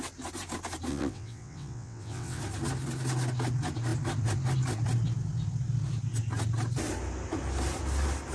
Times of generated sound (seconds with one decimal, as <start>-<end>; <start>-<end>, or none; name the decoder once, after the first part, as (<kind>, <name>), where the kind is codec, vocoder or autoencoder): 0.9-2.4 (vocoder, WaveNeXt)